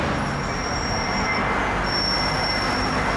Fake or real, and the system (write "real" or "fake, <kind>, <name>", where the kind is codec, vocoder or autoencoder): real